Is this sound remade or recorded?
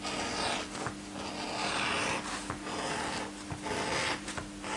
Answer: recorded